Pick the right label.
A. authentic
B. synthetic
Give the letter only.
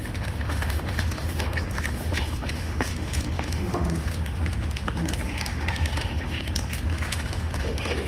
B